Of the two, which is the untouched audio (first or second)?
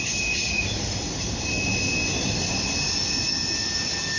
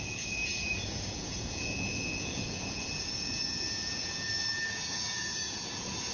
first